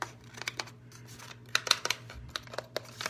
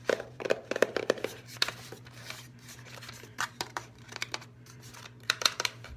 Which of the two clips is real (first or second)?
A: first